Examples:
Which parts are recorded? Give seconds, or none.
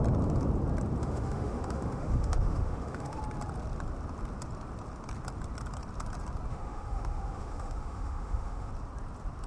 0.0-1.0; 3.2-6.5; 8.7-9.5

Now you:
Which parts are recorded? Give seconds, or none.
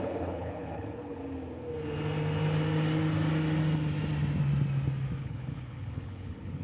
1.2-5.2